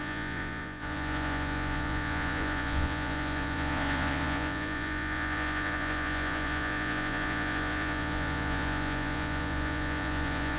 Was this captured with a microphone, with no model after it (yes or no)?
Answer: no